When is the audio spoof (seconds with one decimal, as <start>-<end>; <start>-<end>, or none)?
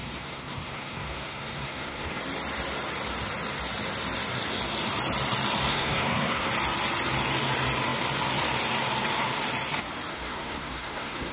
0.0-2.2; 5.7-6.5; 10.1-11.3